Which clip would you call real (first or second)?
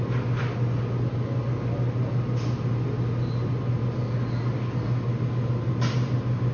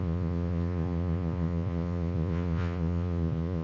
first